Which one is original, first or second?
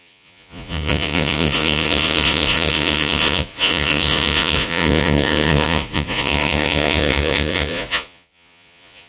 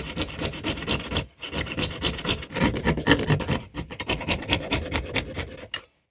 second